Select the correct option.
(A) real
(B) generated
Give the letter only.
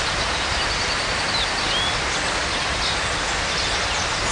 A